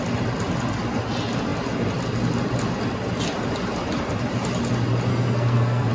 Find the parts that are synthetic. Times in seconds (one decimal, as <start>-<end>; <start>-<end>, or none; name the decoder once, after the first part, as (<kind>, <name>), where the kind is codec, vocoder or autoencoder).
5.1-5.9 (codec, SNAC)